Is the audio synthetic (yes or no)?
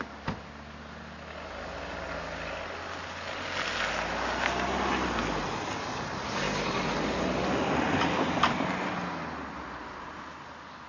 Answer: no